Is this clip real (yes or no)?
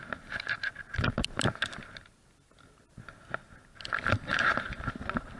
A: yes